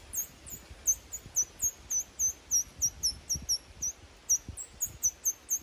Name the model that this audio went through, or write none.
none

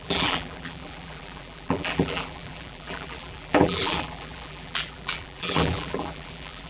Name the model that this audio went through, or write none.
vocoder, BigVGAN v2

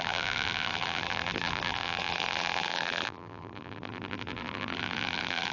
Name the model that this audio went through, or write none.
vocoder, BigVGAN v2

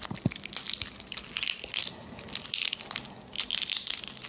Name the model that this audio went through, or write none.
none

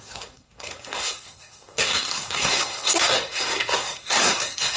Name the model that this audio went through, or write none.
codec, SNAC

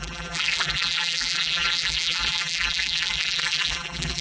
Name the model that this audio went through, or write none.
vocoder, BigVGAN v2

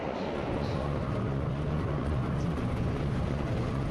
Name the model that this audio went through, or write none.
vocoder, Vocos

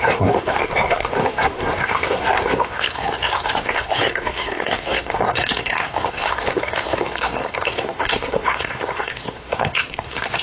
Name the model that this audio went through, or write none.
codec, SNAC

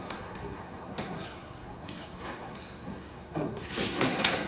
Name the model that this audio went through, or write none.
codec, SNAC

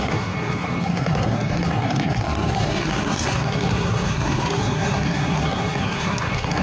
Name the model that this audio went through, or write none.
codec, SNAC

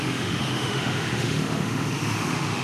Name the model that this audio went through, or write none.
autoencoder, DAC-VAE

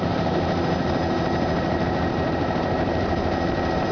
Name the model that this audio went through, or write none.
vocoder, BigVGAN v2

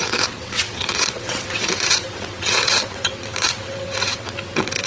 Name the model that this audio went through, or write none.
vocoder, WaveNeXt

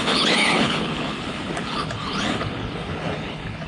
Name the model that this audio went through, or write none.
codec, HILCodec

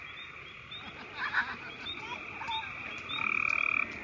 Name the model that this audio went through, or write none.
none